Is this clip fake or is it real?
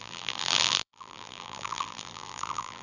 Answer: fake